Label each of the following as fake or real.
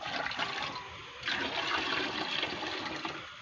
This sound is real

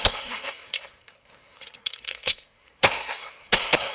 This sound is fake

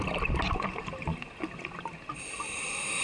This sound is real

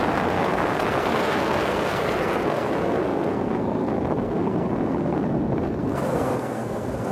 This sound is fake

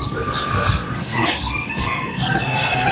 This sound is fake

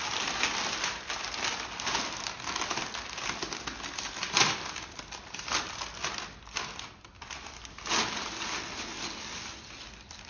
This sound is real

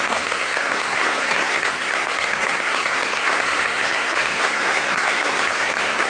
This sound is fake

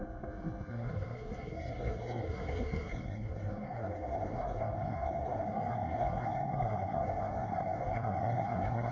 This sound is fake